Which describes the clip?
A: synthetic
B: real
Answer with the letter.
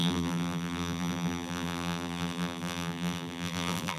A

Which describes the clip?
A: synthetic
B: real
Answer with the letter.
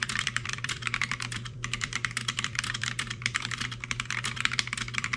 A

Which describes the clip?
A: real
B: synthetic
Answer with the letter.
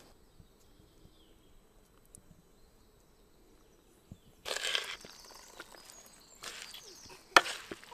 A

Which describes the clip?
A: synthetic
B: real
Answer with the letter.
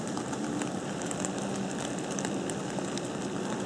A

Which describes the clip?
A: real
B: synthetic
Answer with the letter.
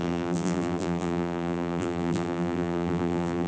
B